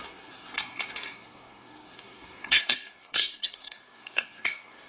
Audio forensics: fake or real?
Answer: fake